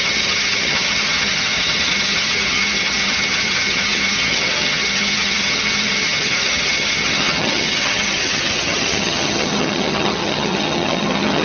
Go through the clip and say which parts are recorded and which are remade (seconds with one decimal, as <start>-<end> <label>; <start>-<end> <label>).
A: 0.0-11.4 remade